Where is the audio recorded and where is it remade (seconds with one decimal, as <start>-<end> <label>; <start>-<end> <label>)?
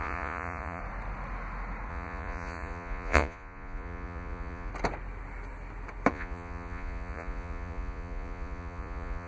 0.0-0.8 remade; 0.8-1.9 recorded; 1.9-4.7 remade; 4.7-6.1 recorded; 6.1-9.3 remade